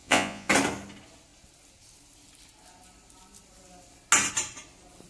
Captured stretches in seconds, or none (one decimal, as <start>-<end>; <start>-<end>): 0.5-5.1